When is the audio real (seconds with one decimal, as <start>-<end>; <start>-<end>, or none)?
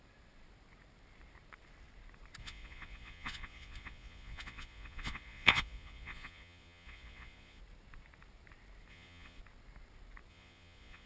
0.0-2.4; 7.6-8.9; 9.4-10.3